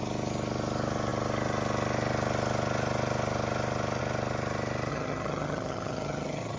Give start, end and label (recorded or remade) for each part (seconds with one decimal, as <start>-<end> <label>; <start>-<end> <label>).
0.0-4.9 recorded; 4.9-6.6 remade